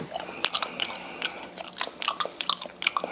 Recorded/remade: recorded